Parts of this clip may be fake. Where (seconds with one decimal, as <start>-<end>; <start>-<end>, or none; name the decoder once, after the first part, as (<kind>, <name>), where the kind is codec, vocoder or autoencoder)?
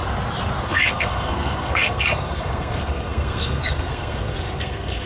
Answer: 0.6-5.1 (codec, SNAC)